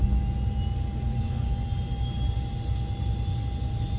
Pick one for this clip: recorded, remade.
recorded